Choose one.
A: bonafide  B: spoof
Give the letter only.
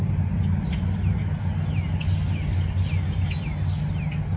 A